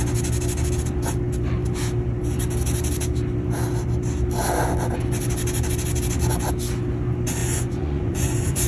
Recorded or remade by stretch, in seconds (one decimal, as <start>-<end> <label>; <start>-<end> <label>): 0.0-7.4 recorded; 7.4-8.7 remade